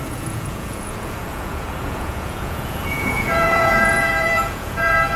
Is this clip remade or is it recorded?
remade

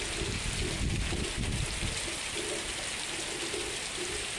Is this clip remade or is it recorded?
recorded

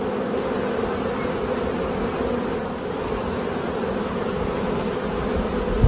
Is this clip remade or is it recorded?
recorded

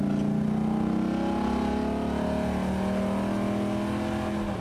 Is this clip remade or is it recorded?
recorded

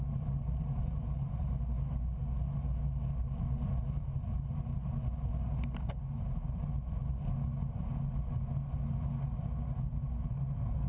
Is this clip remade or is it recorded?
recorded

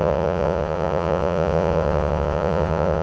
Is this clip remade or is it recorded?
remade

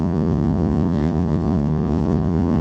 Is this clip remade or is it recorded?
remade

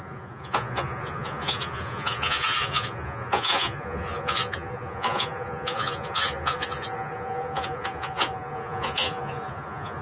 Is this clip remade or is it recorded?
remade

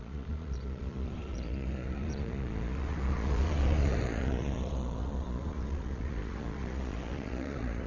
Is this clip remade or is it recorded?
remade